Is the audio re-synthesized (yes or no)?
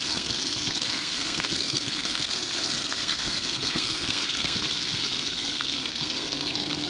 yes